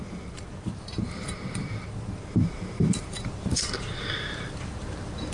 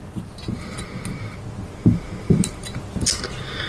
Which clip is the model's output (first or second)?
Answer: first